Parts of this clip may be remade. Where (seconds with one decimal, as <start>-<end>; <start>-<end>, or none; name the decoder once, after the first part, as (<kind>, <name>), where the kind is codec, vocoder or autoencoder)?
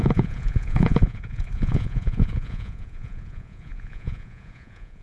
0.0-5.0 (vocoder, Vocos)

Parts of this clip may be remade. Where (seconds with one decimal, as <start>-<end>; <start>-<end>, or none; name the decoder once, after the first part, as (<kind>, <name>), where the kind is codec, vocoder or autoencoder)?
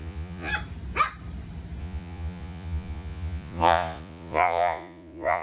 0.0-0.5 (vocoder, Vocos); 1.8-5.4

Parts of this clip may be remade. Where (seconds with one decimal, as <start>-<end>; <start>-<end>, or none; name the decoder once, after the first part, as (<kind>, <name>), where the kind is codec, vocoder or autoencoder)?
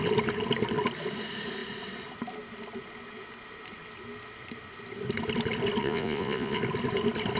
5.8-6.6 (vocoder, Vocos)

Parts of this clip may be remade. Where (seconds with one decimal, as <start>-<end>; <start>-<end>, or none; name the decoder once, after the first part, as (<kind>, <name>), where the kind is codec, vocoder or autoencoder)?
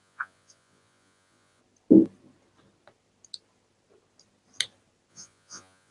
0.0-1.6 (vocoder, Vocos); 5.1-5.9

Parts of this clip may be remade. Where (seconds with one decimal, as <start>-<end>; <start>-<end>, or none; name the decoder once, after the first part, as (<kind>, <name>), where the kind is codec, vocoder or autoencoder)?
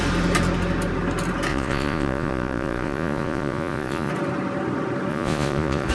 1.5-4.1 (vocoder, Vocos); 5.1-5.9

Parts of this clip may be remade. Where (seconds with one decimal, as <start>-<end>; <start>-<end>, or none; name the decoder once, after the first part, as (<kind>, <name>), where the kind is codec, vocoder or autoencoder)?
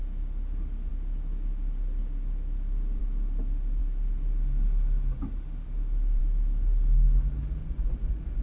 7.6-8.4 (vocoder, Vocos)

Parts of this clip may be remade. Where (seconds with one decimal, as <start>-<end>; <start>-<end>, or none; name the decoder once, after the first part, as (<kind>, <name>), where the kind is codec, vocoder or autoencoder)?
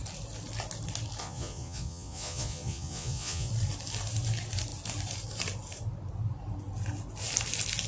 1.2-3.5 (vocoder, Vocos)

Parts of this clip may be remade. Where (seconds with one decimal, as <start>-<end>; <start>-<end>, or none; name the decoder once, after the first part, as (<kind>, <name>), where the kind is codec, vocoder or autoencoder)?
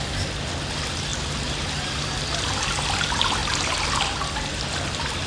none